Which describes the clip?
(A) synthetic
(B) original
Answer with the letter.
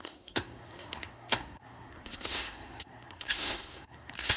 A